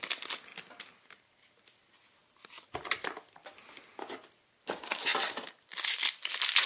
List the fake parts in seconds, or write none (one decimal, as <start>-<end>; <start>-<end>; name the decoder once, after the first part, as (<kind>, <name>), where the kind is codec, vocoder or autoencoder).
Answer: none

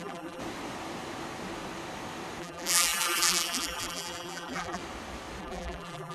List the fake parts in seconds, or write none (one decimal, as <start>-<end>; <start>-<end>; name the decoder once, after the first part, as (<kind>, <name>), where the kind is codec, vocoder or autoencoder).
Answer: 0.0-0.4 (vocoder, BigVGAN v2); 2.4-4.8; 5.4-6.1

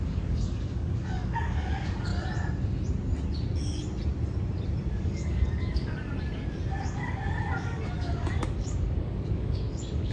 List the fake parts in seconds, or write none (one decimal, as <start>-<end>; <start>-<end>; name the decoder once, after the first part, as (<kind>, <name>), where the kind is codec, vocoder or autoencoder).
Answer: 0.0-2.1 (codec, DAC); 4.9-6.1; 6.7-10.1

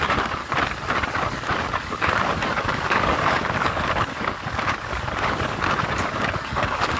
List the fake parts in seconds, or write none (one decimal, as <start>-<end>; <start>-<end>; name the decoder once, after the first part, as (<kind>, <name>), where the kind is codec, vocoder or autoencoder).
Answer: 0.0-0.4 (codec, DAC); 1.1-7.0

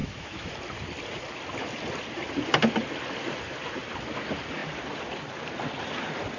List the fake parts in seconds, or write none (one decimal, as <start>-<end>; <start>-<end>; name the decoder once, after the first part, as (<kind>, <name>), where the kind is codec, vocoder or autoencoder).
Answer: 0.0-0.5 (autoencoder, DAC-VAE)

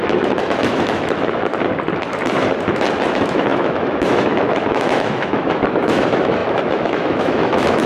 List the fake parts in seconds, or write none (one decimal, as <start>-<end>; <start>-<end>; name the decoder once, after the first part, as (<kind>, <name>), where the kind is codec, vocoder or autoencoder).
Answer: 0.0-1.5 (autoencoder, DAC-VAE); 3.1-7.9

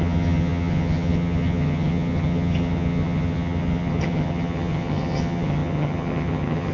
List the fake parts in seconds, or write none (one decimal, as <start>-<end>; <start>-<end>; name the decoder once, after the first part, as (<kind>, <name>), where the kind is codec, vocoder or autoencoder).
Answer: 0.0-6.7 (vocoder, HiFi-GAN)